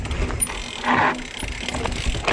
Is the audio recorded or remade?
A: recorded